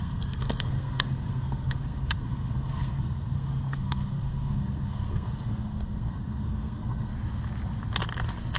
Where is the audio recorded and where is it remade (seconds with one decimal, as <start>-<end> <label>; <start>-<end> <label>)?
0.0-7.1 remade; 7.1-8.6 recorded